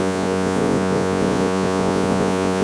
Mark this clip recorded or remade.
remade